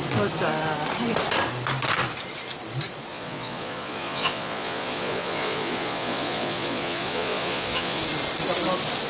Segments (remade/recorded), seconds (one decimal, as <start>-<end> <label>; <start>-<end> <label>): 0.0-3.1 recorded; 3.1-8.0 remade; 8.0-9.1 recorded